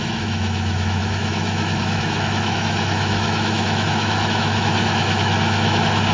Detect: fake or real fake